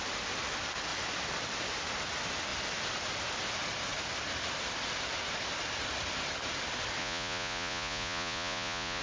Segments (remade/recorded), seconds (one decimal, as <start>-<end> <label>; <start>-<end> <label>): 0.0-7.0 recorded; 7.0-9.0 remade